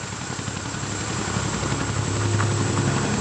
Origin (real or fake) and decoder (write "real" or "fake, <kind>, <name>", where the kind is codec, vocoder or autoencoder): fake, vocoder, BigVGAN v2